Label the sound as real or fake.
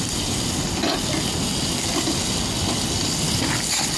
real